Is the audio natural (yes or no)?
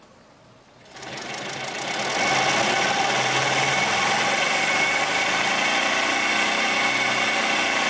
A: yes